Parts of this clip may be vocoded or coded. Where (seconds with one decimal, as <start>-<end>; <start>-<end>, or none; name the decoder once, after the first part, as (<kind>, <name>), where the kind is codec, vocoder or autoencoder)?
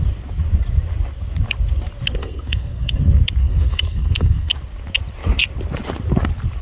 2.2-3.0 (codec, SNAC); 3.4-4.5